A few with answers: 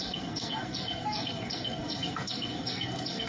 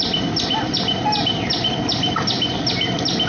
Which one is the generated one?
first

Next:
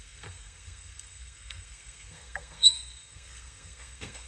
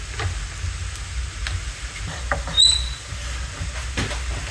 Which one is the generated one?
first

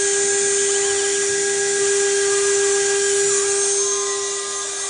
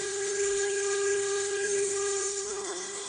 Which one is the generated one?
second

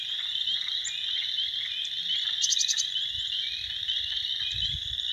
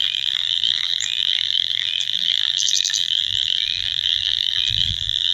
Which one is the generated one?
second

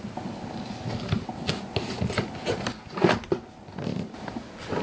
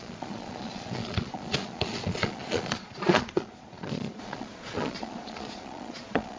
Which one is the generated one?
second